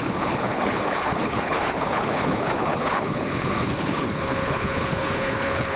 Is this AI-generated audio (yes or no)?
yes